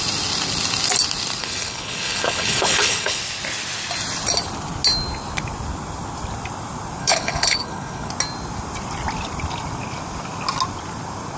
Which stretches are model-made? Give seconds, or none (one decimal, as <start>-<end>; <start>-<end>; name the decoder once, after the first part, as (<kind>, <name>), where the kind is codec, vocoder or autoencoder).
1.4-3.2 (codec, HILCodec); 7.0-8.1